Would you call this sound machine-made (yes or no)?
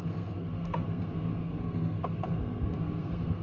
yes